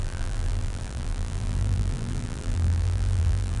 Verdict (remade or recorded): remade